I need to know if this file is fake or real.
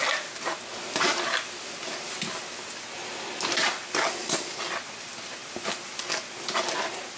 real